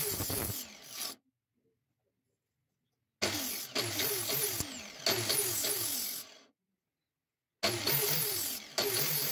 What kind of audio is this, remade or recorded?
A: recorded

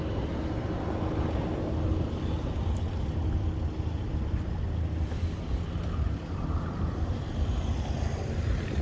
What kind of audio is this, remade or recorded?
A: recorded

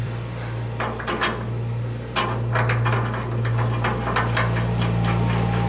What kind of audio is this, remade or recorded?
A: recorded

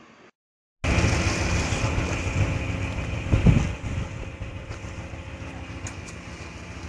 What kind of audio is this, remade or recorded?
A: recorded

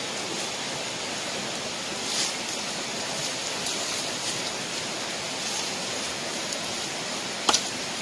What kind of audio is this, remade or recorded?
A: recorded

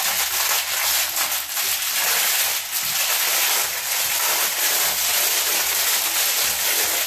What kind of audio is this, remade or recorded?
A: recorded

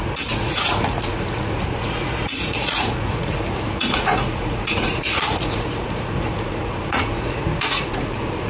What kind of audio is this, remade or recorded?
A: remade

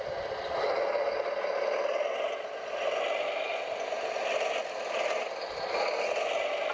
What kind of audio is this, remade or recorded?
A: recorded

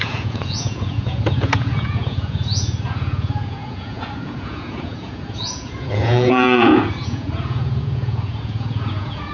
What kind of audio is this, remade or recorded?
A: remade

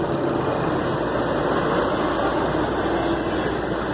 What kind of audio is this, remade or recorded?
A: recorded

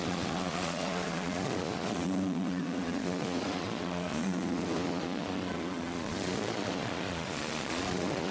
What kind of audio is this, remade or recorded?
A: remade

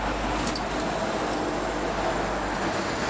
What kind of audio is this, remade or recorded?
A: recorded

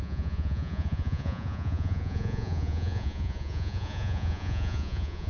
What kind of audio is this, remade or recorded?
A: remade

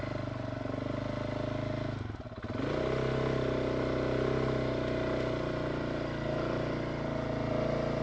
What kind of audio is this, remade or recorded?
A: recorded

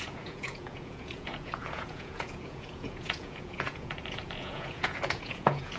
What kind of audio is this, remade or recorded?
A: remade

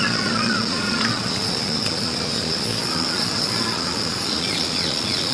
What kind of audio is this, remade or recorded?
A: remade